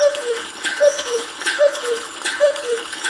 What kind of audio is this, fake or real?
fake